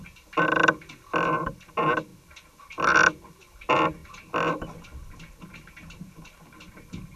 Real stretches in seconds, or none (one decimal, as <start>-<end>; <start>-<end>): 0.0-7.2